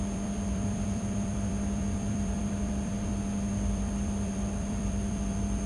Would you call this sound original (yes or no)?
no